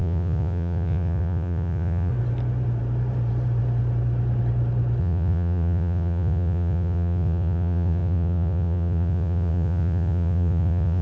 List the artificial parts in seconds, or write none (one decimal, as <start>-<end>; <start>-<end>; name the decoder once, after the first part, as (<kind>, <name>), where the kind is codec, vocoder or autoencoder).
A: 0.0-2.1 (vocoder, Vocos); 5.0-11.0